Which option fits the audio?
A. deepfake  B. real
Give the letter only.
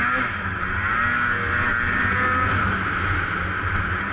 B